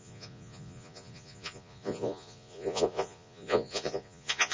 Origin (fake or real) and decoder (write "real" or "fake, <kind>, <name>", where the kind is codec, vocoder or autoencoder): fake, vocoder, Vocos